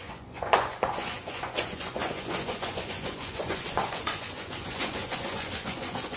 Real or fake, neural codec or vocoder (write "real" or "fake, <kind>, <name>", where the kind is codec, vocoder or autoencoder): fake, vocoder, Vocos